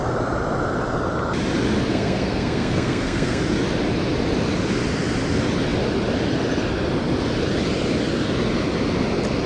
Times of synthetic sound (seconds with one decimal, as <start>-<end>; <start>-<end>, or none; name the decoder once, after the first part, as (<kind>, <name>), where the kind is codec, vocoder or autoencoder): 1.9-3.4 (codec, SNAC)